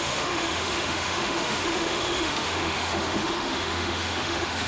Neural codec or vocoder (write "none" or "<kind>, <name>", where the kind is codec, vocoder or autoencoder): autoencoder, DAC-VAE